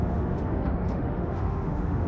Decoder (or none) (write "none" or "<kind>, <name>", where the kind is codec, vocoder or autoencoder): autoencoder, DAC-VAE